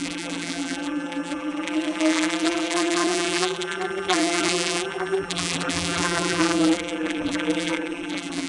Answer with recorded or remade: remade